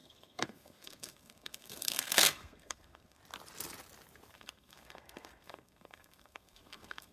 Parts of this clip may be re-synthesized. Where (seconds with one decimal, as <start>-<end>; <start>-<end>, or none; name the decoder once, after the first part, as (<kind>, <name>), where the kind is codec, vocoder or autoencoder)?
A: 0.0-3.2 (codec, SNAC); 4.3-7.1